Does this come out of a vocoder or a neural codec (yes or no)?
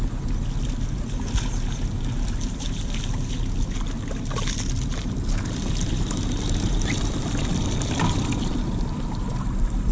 no